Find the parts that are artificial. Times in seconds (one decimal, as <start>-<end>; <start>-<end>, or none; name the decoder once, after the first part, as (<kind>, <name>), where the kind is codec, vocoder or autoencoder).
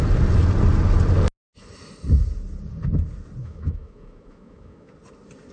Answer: 3.4-4.9 (autoencoder, DAC-VAE)